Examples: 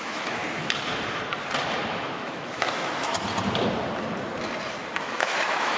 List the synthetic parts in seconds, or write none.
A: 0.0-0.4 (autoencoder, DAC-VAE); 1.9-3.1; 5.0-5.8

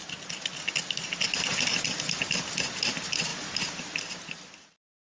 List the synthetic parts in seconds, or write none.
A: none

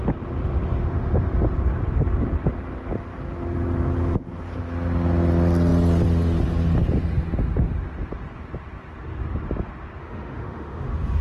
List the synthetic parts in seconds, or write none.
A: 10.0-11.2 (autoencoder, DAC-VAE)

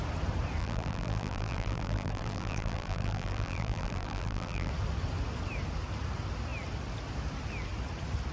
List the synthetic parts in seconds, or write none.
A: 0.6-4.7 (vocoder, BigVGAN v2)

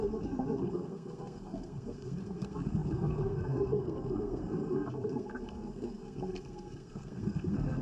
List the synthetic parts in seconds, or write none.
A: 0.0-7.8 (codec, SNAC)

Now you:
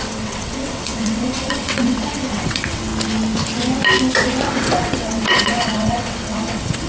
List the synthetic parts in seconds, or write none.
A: 0.0-2.9 (vocoder, WaveNeXt); 4.5-6.9

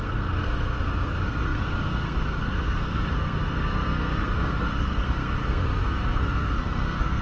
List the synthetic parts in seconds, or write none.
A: 0.0-7.2 (codec, SNAC)

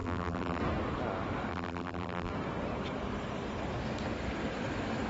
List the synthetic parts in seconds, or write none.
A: 0.0-0.6 (vocoder, BigVGAN v2); 1.5-2.3